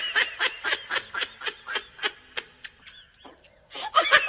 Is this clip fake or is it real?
real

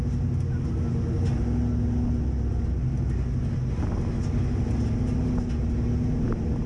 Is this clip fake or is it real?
real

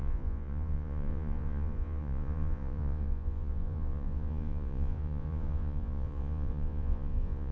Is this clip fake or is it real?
fake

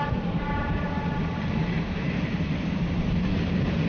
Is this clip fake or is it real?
fake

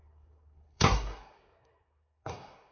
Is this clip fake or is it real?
fake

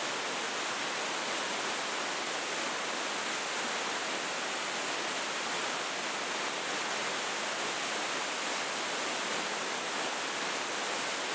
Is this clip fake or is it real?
real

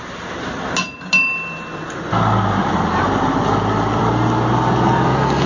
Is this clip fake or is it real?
real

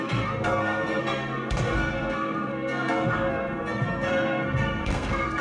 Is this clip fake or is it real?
fake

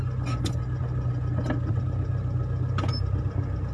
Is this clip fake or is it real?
real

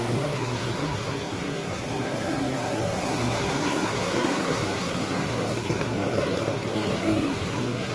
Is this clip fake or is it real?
fake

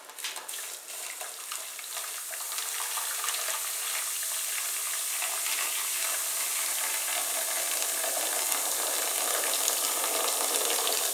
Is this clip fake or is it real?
real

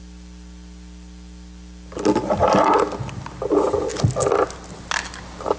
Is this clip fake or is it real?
real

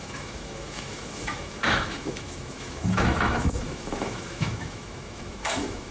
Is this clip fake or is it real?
fake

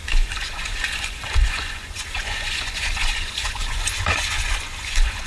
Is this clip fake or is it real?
fake